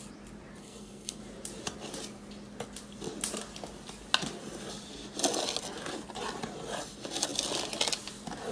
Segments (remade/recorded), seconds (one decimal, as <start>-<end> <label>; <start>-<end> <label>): 0.0-0.6 recorded; 0.6-1.2 remade; 1.2-8.5 recorded